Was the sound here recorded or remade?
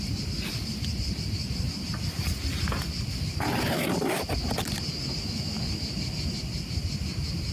recorded